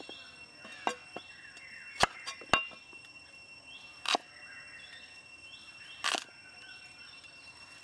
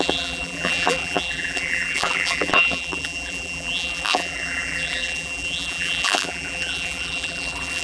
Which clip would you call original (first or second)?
first